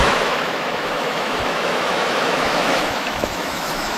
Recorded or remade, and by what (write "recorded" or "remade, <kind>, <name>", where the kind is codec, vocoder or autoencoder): remade, autoencoder, DAC-VAE